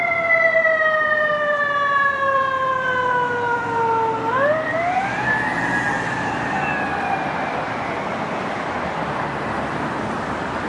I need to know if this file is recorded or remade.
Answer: remade